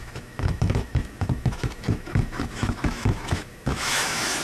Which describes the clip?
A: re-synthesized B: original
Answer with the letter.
A